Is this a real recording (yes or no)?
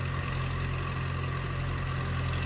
yes